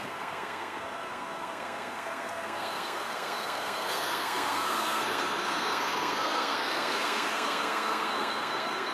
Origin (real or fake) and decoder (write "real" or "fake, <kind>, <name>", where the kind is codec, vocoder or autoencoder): fake, codec, SNAC